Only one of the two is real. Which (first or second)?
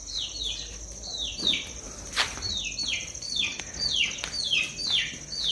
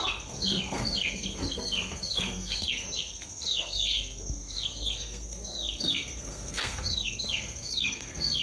first